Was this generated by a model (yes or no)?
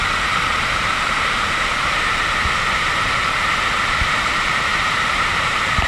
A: yes